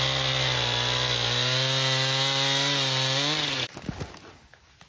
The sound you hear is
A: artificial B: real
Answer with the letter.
B